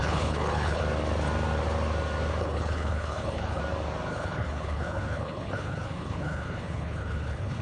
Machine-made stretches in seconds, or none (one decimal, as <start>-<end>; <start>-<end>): 0.0-0.8; 2.4-3.6; 4.1-7.6